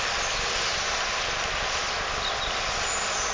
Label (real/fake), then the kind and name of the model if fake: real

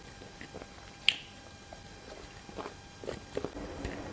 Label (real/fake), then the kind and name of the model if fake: real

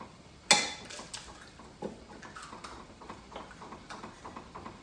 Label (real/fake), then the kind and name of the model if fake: real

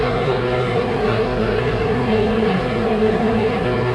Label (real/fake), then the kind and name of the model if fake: fake, codec, SNAC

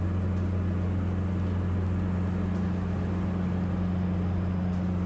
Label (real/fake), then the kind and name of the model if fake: real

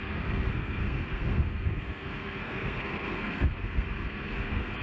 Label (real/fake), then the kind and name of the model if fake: fake, codec, SNAC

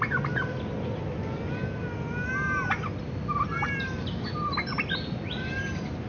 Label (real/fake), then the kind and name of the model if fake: real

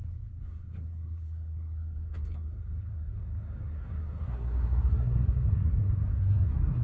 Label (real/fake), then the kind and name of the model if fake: fake, codec, SNAC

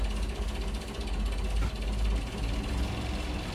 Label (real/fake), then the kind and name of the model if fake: real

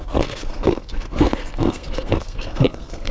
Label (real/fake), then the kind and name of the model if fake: fake, codec, SNAC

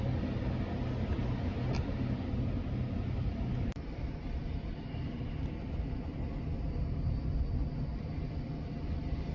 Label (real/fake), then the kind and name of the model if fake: real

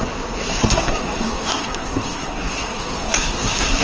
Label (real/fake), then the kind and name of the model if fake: fake, codec, SNAC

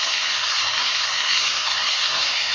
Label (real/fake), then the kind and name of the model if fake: fake, codec, SNAC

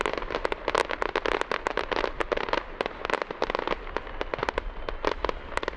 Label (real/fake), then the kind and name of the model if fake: real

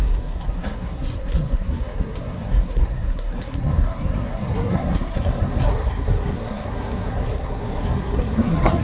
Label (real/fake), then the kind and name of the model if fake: fake, codec, SNAC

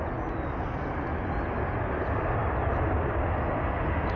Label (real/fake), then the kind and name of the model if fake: real